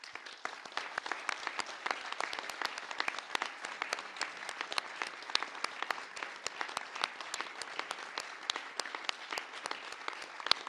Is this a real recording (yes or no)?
yes